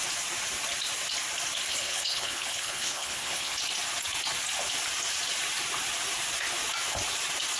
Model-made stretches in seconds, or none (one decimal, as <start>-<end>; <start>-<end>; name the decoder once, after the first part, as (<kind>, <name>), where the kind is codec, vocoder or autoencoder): 1.7-3.6 (codec, HILCodec)